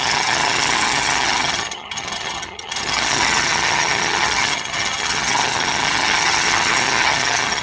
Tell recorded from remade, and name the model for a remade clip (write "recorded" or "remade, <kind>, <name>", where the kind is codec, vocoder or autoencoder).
remade, vocoder, HiFi-GAN